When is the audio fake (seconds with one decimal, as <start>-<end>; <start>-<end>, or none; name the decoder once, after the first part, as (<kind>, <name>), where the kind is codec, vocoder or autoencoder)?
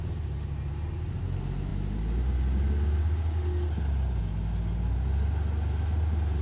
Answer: none